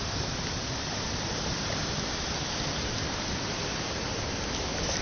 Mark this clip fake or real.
real